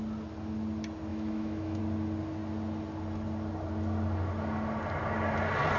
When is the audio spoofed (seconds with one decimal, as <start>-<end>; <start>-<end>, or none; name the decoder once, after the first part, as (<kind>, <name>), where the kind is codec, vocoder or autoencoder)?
1.1-1.8 (autoencoder, DAC-VAE)

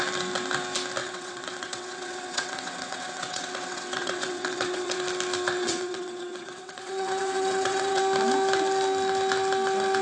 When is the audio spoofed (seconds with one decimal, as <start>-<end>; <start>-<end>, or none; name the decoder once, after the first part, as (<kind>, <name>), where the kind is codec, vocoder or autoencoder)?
1.0-5.0 (vocoder, WaveNeXt); 5.6-8.0

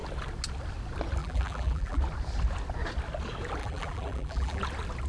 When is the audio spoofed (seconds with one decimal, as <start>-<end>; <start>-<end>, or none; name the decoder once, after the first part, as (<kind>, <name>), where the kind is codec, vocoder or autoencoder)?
1.2-2.0 (vocoder, BigVGAN v2); 3.6-4.6

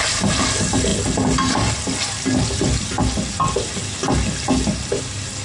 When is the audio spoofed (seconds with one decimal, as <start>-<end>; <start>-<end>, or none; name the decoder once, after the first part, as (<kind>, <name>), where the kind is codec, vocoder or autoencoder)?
none

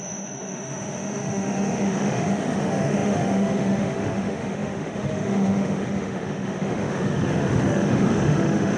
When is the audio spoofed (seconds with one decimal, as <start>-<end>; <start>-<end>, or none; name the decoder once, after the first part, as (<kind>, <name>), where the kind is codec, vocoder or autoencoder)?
0.0-8.8 (autoencoder, DAC-VAE)

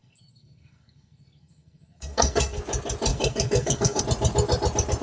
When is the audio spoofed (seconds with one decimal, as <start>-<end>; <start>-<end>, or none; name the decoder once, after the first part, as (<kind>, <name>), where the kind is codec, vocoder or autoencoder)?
0.0-2.6 (codec, SNAC); 3.1-4.0